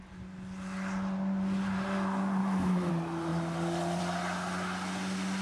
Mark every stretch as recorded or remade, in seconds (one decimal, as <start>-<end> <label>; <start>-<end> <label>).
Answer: 0.0-2.4 recorded; 2.4-2.9 remade; 2.9-5.4 recorded